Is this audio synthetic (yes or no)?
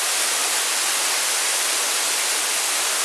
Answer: no